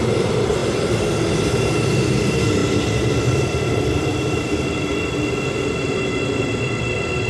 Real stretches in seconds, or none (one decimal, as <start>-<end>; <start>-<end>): 0.6-1.3; 2.6-3.2; 4.9-7.3